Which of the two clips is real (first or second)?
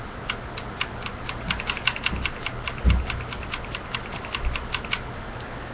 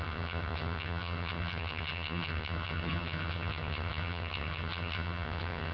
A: first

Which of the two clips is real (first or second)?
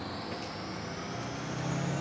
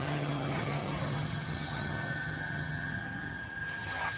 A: first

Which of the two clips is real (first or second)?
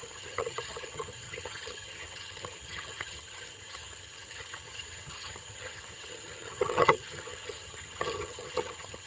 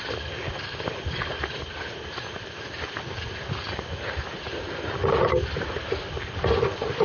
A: second